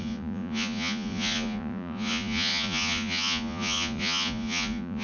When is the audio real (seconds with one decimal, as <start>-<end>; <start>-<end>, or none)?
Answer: none